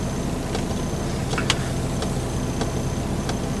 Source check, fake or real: real